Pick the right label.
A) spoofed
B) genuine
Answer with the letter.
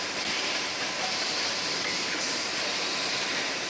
A